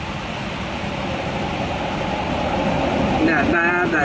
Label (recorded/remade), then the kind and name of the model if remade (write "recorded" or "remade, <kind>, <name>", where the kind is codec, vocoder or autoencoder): recorded